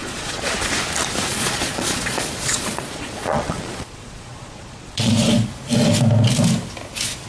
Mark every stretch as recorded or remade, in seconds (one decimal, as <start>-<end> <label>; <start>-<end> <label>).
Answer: 0.0-0.5 remade; 0.5-1.3 recorded; 1.3-5.1 remade; 5.1-7.3 recorded